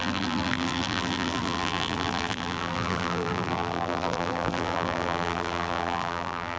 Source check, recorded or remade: remade